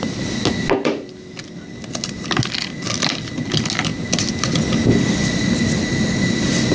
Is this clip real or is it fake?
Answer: real